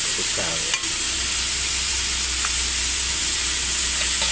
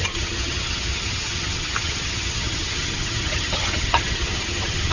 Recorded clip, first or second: first